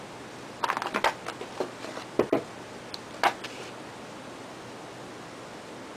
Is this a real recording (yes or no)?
yes